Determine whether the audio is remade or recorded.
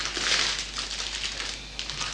recorded